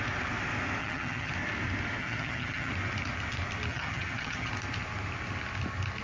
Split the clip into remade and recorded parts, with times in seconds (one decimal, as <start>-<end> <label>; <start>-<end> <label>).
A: 0.0-0.8 recorded; 0.8-1.3 remade; 1.3-2.0 recorded; 2.0-2.7 remade; 2.7-3.7 recorded; 3.7-4.5 remade; 4.5-6.0 recorded